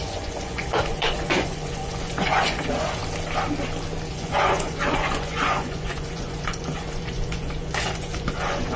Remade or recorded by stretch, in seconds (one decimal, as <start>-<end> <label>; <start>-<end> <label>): 0.0-3.0 remade; 3.0-4.1 recorded; 4.1-8.8 remade